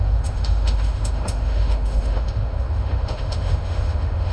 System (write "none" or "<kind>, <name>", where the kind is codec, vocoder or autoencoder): autoencoder, DAC-VAE